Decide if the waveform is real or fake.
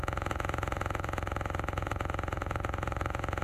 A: fake